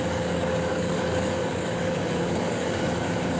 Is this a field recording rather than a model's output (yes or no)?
no